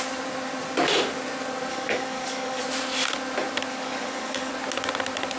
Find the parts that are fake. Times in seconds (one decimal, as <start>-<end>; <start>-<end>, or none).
1.7-2.6; 3.7-4.5